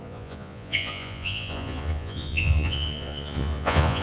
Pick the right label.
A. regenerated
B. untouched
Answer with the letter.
A